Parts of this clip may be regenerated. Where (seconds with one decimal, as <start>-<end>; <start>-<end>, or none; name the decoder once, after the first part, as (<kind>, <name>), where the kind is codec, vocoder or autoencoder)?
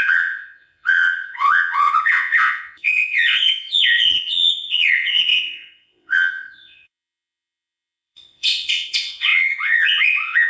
0.0-10.5 (vocoder, WaveNeXt)